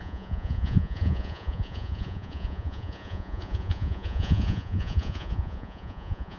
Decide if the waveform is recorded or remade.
remade